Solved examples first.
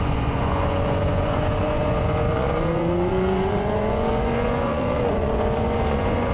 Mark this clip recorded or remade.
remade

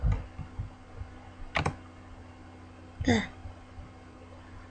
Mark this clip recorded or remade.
recorded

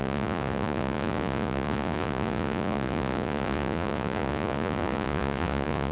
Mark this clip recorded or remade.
remade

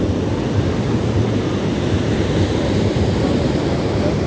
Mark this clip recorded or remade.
recorded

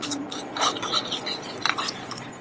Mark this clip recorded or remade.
remade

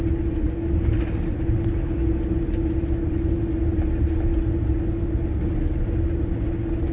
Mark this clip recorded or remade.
recorded